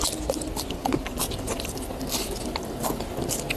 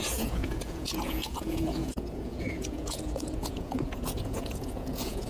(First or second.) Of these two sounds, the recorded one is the first